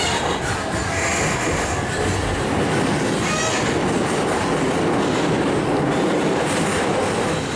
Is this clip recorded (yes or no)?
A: yes